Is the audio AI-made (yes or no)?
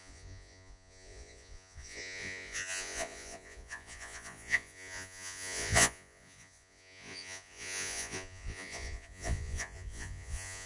yes